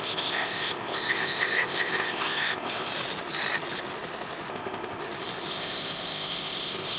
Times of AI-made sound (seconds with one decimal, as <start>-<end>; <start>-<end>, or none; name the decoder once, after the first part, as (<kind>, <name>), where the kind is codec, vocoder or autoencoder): 0.0-2.9 (codec, ZipCodec); 4.5-5.0; 5.5-7.0